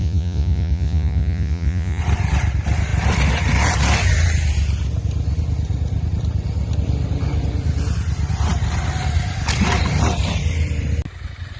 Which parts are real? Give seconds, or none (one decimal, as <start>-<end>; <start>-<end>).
2.0-11.6